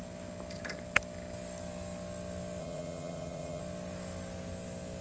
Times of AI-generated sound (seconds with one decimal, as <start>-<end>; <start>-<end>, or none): 2.6-3.6